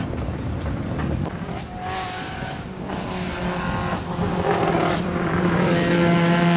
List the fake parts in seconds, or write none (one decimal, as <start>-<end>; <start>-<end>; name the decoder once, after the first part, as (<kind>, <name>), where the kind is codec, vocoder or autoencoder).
4.3-5.7 (vocoder, BigVGAN v2)